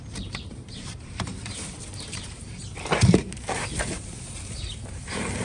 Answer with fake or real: fake